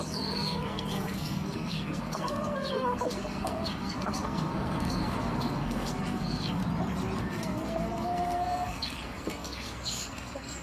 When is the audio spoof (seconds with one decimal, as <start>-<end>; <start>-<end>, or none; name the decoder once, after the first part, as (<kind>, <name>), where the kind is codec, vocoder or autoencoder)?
0.0-6.6 (codec, SNAC); 7.2-10.6

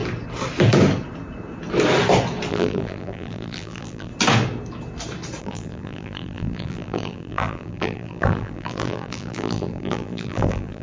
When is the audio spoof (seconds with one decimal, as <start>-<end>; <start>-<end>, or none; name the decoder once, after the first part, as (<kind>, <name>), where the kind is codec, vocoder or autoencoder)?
2.5-4.1 (vocoder, BigVGAN v2); 5.4-10.8

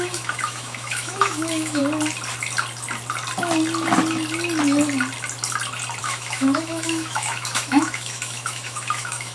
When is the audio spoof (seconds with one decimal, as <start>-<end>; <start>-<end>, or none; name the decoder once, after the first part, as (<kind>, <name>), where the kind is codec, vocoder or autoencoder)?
0.0-1.8 (autoencoder, DAC-VAE); 6.0-9.3

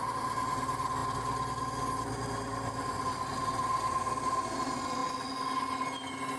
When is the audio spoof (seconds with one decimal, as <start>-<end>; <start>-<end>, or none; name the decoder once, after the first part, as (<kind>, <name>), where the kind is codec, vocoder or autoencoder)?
none

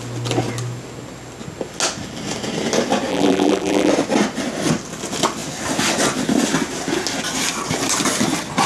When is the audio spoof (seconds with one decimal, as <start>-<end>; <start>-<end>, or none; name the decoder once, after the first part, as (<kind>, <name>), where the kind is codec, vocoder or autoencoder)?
3.1-3.9 (vocoder, BigVGAN v2)